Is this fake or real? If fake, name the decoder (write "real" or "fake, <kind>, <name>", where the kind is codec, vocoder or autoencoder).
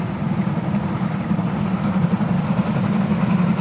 real